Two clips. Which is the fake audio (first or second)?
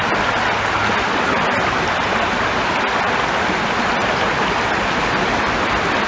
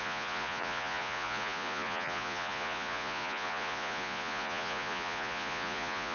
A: second